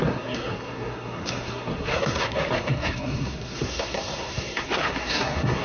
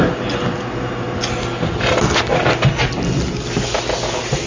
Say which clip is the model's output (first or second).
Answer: first